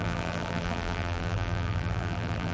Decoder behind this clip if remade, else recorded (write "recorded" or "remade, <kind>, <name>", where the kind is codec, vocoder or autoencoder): remade, vocoder, BigVGAN v2